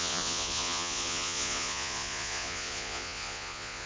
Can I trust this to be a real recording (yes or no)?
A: no